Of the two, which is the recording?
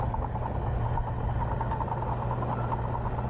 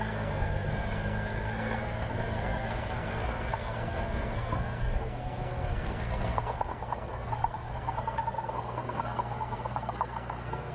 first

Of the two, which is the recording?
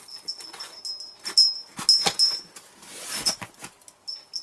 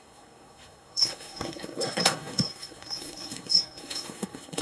first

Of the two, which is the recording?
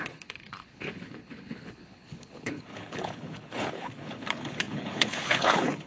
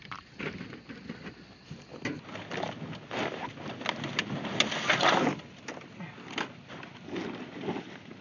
second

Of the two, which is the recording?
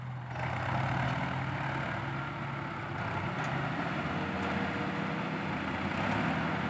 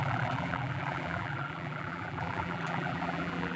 first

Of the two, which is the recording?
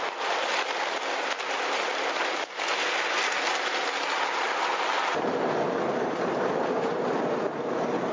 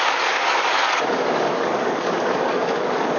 first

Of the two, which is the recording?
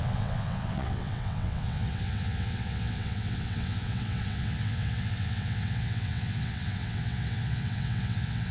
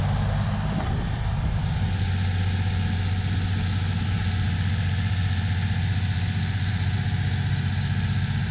second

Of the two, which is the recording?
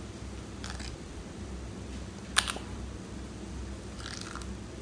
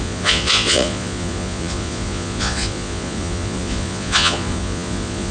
first